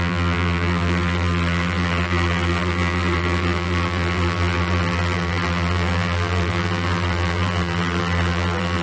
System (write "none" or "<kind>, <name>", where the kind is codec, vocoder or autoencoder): vocoder, BigVGAN v2